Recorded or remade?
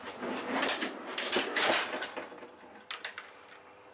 recorded